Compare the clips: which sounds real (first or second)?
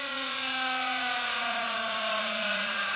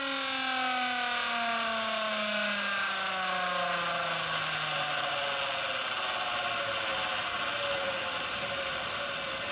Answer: second